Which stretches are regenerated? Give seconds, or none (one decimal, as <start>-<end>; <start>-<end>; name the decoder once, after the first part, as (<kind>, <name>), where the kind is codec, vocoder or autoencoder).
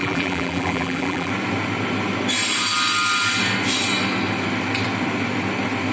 0.0-1.3 (vocoder, BigVGAN v2)